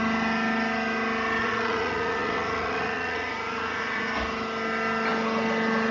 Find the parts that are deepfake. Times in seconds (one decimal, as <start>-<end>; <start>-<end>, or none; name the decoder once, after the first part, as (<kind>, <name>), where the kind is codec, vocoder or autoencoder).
1.4-4.1 (vocoder, Vocos)